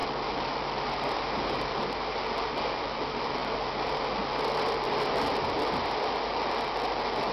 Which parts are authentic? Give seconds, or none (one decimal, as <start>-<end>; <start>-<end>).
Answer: 0.0-7.3